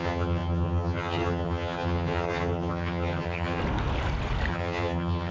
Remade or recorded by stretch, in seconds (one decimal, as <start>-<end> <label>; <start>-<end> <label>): 0.0-3.6 remade; 3.6-4.5 recorded; 4.5-5.3 remade